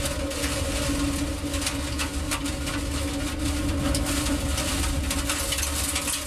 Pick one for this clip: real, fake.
real